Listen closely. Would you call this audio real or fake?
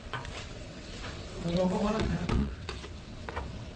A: fake